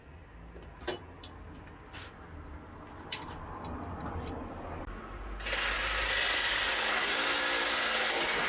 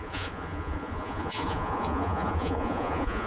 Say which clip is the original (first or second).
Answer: first